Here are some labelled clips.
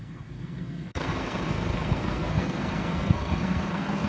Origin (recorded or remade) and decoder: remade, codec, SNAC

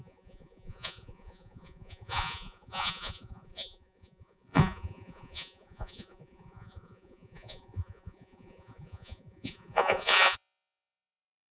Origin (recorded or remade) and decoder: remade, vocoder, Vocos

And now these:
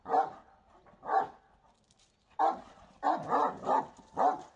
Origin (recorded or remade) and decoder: recorded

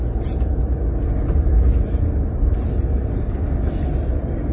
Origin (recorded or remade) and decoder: recorded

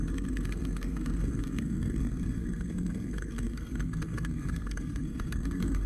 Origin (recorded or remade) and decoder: remade, codec, SNAC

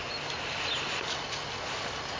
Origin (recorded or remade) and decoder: recorded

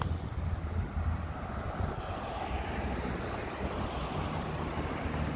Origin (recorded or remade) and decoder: recorded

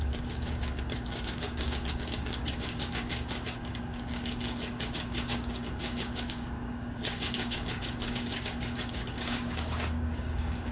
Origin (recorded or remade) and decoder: remade, codec, DAC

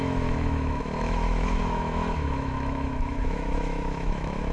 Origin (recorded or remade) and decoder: remade, autoencoder, DAC-VAE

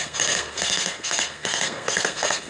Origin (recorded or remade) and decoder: remade, codec, SNAC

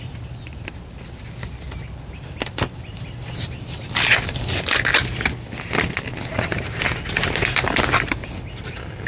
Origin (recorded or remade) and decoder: recorded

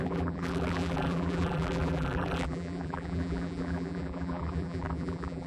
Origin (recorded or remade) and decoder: remade, vocoder, BigVGAN v2